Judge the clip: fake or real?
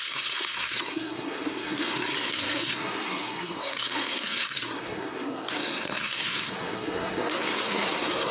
fake